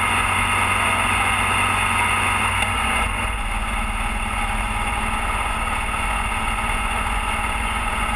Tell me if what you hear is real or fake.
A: fake